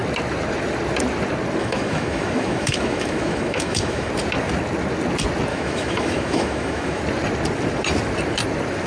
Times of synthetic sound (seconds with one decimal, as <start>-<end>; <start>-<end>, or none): 1.6-4.1; 5.5-7.0